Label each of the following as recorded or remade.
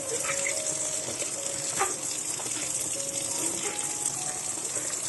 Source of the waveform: recorded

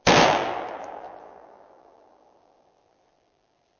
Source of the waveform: remade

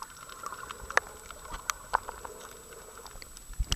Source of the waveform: recorded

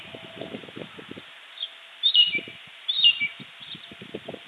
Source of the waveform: recorded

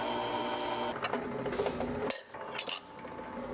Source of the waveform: recorded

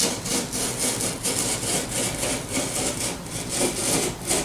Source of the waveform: remade